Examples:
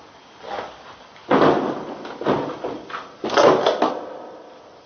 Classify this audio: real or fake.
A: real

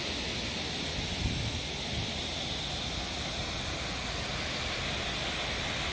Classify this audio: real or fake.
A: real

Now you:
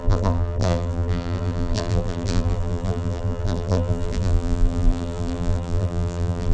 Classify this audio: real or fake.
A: fake